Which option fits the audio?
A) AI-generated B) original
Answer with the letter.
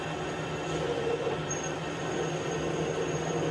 B